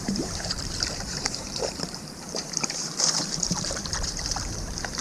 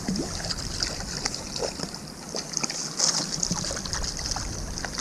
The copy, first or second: first